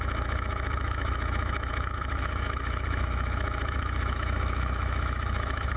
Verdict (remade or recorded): remade